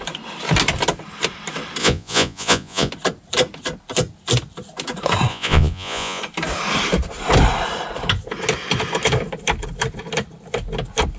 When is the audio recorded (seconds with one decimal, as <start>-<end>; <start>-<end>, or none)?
0.0-1.8; 2.9-5.3; 6.2-11.2